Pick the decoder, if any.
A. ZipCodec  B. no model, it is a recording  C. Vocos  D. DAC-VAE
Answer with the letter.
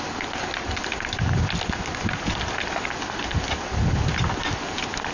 B